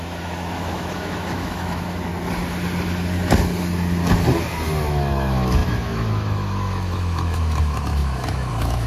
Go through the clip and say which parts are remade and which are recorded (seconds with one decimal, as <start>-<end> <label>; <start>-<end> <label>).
0.0-2.1 remade; 2.1-4.8 recorded; 4.8-8.9 remade